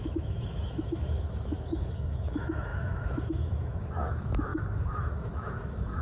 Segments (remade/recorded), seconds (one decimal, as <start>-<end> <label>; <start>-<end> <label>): 0.0-6.0 remade